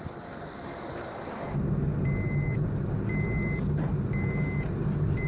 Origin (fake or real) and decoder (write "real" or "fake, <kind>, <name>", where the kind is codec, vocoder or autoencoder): real